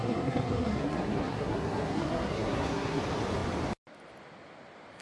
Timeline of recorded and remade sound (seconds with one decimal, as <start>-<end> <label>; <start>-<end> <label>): 0.0-3.0 remade; 3.0-5.0 recorded